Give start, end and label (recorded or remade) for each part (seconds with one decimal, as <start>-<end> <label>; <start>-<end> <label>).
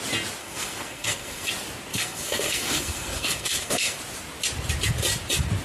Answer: 0.0-0.4 recorded; 0.4-1.5 remade; 1.5-1.9 recorded; 1.9-4.0 remade; 4.0-5.6 recorded